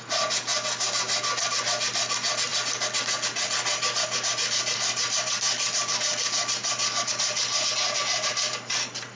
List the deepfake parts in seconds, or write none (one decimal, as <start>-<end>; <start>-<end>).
0.5-1.0